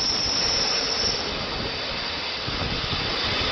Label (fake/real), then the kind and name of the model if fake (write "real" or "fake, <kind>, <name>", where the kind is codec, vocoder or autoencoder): real